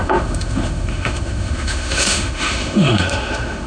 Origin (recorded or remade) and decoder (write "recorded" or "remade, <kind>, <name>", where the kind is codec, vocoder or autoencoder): remade, autoencoder, DAC-VAE